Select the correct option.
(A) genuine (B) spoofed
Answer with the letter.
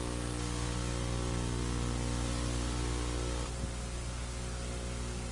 A